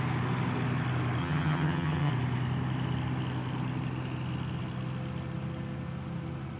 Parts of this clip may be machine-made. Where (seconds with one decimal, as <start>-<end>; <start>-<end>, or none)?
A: 1.2-2.1